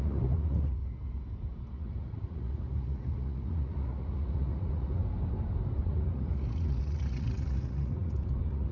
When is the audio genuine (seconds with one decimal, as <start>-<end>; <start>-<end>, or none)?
0.8-1.7; 5.0-5.8